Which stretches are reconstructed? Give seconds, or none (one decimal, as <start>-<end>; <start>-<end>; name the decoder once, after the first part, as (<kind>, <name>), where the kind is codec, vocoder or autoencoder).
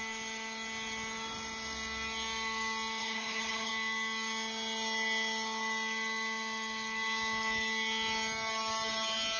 3.0-3.7 (codec, HILCodec)